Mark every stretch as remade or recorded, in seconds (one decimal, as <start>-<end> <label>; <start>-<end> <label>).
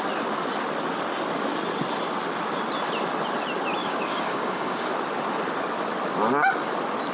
0.0-3.8 recorded; 3.8-4.9 remade; 4.9-7.1 recorded